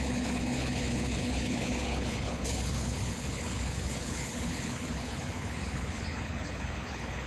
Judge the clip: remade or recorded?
remade